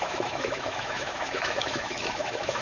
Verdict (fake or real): fake